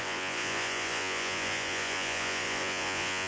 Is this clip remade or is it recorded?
remade